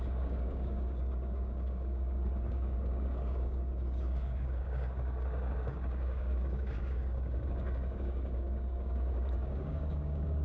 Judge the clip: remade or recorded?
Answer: remade